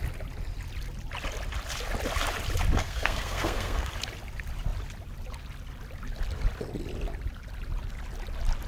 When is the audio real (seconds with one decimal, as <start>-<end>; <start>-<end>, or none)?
0.0-2.8; 3.9-8.7